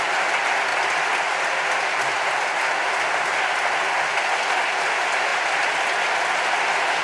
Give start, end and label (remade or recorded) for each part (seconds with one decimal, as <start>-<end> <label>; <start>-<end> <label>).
0.0-7.0 recorded

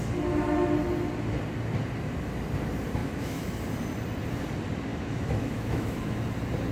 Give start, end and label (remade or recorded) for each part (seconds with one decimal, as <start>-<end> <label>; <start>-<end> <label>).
0.0-3.0 recorded; 3.0-3.6 remade; 3.6-4.9 recorded; 4.9-6.2 remade; 6.2-6.7 recorded

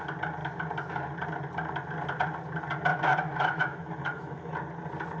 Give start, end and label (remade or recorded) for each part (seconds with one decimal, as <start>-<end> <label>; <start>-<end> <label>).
0.0-2.9 recorded; 2.9-4.5 remade; 4.5-5.2 recorded

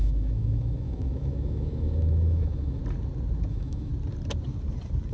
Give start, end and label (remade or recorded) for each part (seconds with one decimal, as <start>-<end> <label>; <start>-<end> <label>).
0.0-2.8 remade; 2.8-3.5 recorded; 3.5-3.9 remade; 3.9-5.1 recorded